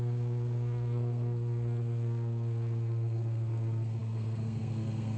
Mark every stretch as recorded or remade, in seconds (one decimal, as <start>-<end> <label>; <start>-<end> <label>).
0.0-5.2 remade